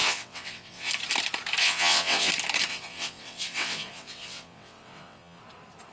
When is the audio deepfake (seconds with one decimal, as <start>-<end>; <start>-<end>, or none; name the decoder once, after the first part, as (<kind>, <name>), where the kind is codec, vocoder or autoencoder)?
0.0-0.9 (vocoder, WaveNeXt); 1.6-2.3; 2.7-5.4